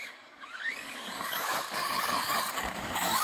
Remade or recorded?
remade